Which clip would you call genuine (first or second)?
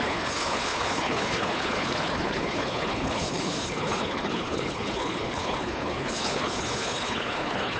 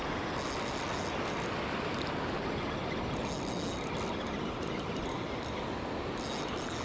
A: second